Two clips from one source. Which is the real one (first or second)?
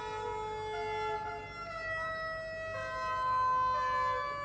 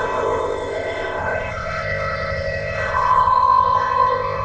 first